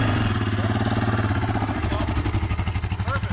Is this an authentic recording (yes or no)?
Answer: yes